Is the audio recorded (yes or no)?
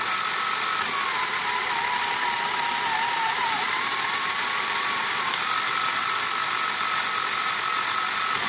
yes